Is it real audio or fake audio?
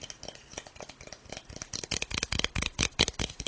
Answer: real